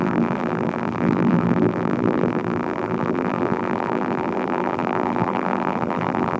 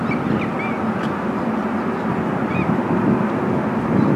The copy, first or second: first